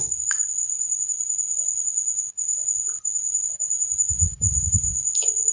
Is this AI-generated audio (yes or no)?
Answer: yes